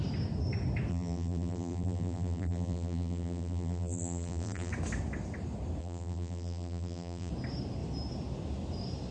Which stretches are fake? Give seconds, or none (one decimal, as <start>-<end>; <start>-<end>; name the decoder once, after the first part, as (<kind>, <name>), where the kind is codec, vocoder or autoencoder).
0.9-4.7 (vocoder, BigVGAN v2); 5.8-7.3